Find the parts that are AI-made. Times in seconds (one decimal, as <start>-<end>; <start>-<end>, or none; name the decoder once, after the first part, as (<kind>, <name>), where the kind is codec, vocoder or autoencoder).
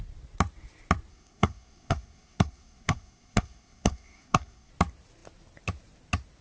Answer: 1.1-4.7 (codec, SNAC)